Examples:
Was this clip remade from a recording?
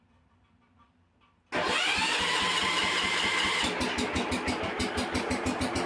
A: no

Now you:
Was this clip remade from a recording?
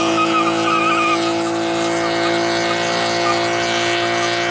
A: no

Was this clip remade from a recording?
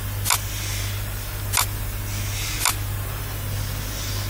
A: no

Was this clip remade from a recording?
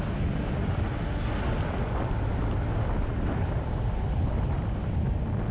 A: no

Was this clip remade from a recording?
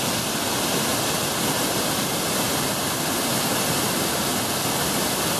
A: no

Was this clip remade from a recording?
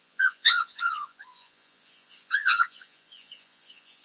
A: yes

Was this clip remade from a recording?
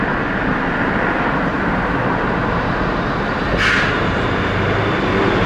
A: no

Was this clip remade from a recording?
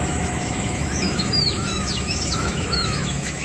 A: yes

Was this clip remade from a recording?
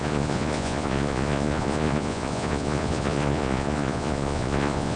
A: yes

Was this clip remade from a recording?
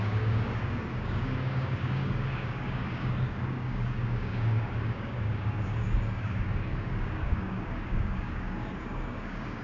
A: yes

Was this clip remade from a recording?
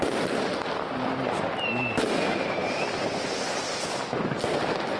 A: no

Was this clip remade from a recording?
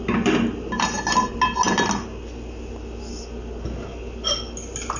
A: no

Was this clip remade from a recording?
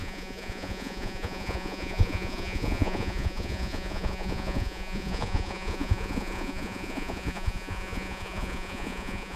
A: yes